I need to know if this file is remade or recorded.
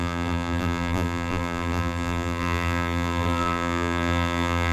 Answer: remade